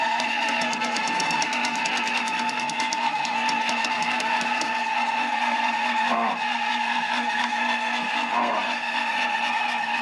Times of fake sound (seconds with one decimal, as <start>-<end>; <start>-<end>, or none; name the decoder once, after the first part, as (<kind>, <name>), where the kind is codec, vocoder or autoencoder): 0.0-10.0 (codec, SNAC)